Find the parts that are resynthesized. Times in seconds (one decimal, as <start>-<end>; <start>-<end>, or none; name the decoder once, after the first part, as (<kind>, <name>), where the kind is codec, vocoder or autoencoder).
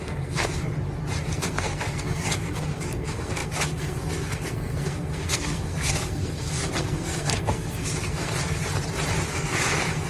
0.0-0.7 (codec, SNAC); 1.2-8.6; 9.3-10.1